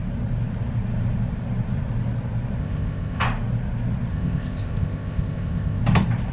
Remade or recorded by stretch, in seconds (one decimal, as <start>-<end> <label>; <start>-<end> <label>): 0.0-2.6 recorded; 2.6-3.2 remade; 3.2-4.1 recorded; 4.1-5.8 remade; 5.8-6.3 recorded